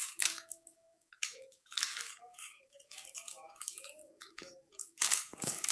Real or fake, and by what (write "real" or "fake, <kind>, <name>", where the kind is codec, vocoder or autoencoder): fake, codec, DAC